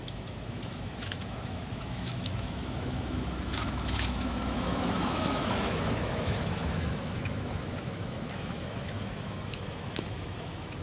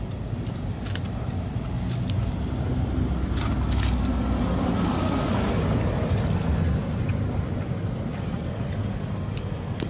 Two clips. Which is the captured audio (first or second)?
second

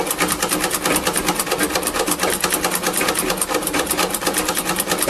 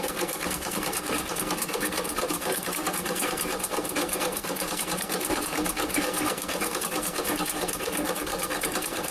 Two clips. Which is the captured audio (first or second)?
first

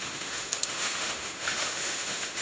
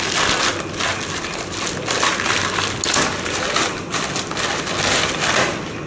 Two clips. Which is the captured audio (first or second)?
second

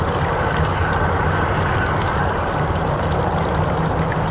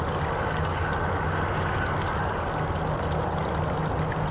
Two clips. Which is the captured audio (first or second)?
second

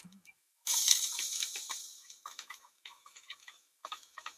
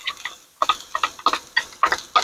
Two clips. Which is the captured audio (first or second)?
second